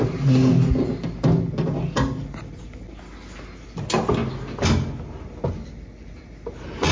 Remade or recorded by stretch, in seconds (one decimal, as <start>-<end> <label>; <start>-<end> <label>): 0.0-6.9 recorded